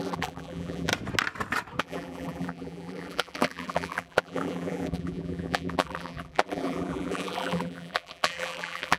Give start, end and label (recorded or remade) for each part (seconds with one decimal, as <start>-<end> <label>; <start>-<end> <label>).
0.0-0.9 remade; 0.9-1.8 recorded; 1.8-9.0 remade